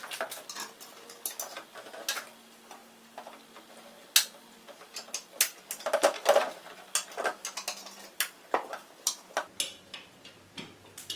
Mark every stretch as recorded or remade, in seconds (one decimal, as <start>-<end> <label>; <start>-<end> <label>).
0.0-11.2 recorded